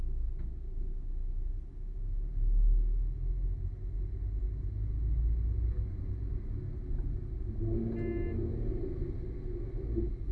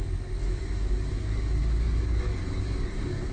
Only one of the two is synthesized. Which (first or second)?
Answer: second